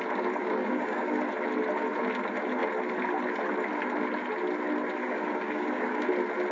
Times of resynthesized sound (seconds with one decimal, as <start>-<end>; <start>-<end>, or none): 0.4-1.2; 5.0-6.1